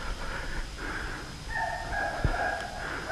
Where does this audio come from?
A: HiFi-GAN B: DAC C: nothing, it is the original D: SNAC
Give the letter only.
C